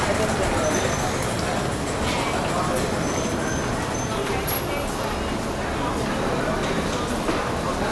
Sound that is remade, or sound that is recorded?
recorded